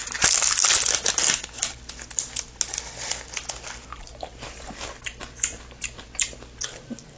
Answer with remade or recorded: recorded